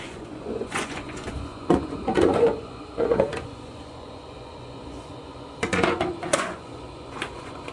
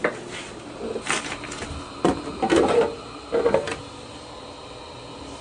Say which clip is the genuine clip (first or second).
second